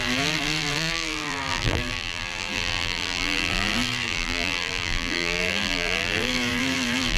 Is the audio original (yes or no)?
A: no